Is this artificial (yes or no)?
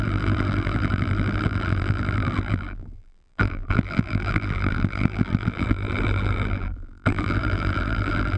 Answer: yes